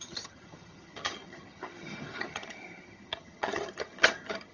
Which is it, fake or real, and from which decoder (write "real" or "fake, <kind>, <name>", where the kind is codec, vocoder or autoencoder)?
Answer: fake, vocoder, HiFi-GAN